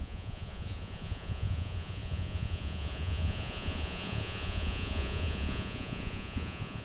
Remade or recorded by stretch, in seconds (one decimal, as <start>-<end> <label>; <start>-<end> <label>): 0.0-6.8 remade